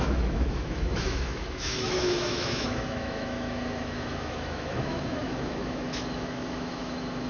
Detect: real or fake fake